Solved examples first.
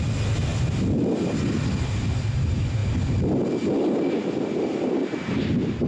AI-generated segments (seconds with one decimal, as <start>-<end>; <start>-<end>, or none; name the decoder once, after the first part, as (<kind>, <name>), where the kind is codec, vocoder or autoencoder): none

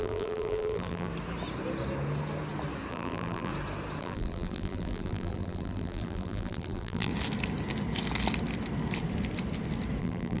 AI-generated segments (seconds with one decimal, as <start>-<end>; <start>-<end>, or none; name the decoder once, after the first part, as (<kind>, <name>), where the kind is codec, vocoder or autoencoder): 0.0-1.1 (vocoder, BigVGAN v2); 2.9-3.5; 4.0-7.1; 10.0-10.4

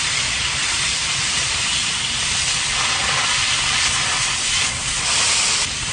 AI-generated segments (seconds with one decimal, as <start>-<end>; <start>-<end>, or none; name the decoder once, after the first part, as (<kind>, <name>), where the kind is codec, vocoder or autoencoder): 0.0-5.9 (vocoder, BigVGAN v2)